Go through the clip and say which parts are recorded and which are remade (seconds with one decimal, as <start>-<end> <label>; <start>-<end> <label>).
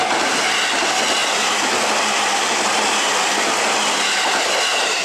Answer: 0.0-5.0 recorded